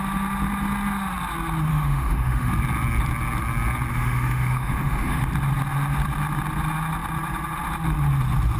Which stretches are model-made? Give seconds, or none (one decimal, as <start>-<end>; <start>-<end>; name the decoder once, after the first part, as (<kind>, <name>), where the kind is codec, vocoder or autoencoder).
1.7-2.5 (autoencoder, DAC-VAE); 3.9-5.3